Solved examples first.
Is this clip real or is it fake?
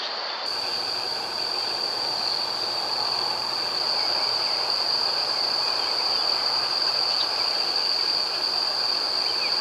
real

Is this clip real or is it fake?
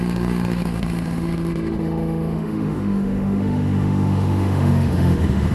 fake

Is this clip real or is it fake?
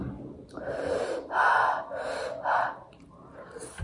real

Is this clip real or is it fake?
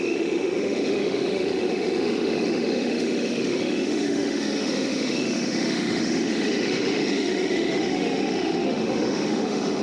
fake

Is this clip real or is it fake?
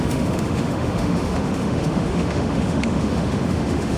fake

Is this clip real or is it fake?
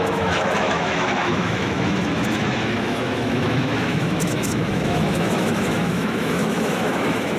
fake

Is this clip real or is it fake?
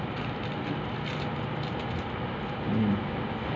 real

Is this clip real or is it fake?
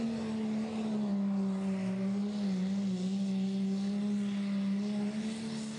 real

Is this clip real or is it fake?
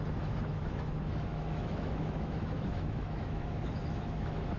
fake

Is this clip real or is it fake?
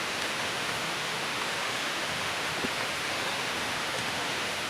fake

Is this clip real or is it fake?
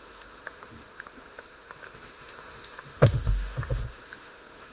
fake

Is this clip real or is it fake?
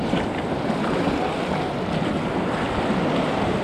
real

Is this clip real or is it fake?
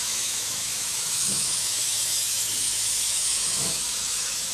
fake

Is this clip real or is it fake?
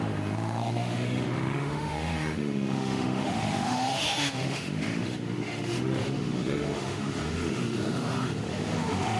fake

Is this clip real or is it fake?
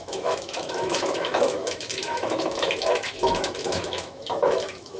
fake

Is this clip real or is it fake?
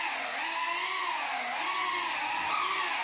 real